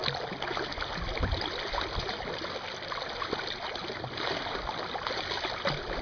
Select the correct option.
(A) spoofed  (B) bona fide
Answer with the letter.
B